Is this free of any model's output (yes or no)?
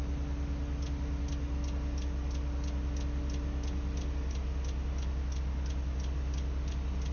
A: yes